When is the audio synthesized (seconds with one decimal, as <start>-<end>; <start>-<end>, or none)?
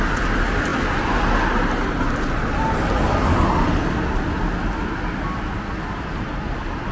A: none